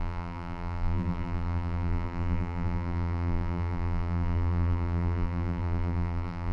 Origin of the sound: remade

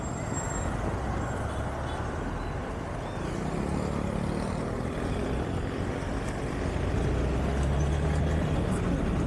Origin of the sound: recorded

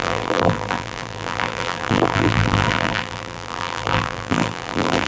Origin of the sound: remade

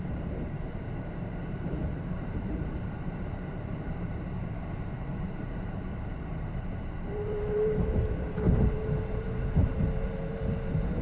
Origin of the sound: remade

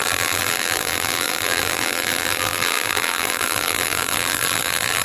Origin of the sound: remade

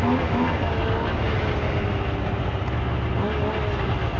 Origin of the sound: recorded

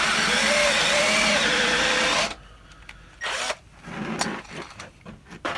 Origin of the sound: recorded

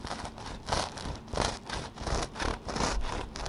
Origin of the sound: recorded